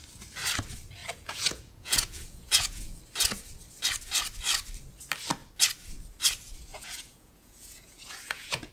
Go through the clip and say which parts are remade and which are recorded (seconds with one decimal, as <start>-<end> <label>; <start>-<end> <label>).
0.0-1.0 recorded; 1.0-3.0 remade; 3.0-6.7 recorded; 6.7-8.7 remade